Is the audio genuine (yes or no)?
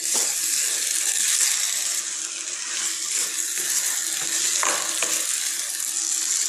yes